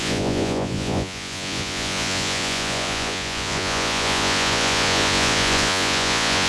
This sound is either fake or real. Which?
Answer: fake